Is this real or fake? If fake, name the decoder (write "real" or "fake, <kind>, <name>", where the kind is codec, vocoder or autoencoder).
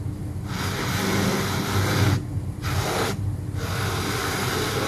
real